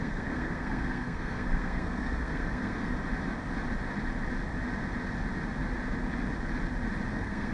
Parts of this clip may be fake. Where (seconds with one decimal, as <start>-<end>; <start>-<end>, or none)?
0.0-2.9; 7.1-7.5